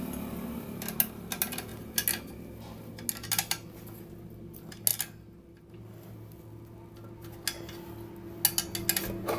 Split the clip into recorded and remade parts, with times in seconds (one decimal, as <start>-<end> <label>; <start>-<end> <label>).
0.0-9.4 recorded